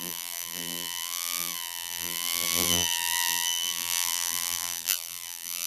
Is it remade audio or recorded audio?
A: remade